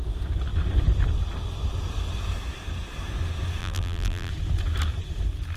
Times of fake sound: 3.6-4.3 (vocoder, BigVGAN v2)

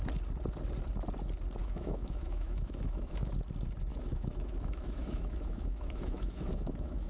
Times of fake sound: 1.6-3.3 (autoencoder, DAC-VAE); 3.9-7.1